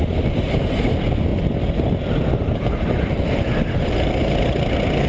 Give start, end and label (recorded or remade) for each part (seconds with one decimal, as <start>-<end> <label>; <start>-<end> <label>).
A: 0.0-5.1 recorded

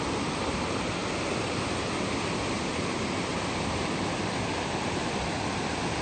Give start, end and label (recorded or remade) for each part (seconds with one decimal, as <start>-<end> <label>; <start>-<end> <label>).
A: 0.0-6.0 recorded

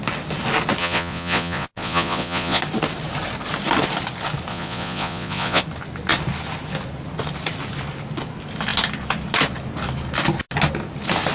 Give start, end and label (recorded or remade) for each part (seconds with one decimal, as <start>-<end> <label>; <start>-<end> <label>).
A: 0.0-0.8 recorded; 0.8-2.6 remade; 2.6-4.5 recorded; 4.5-5.6 remade; 5.6-11.3 recorded